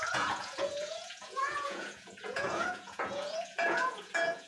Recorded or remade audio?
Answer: remade